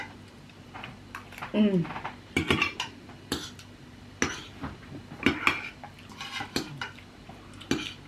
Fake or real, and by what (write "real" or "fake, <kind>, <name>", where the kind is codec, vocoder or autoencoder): real